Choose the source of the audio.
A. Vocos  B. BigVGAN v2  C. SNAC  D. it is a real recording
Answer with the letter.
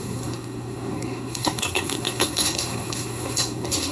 C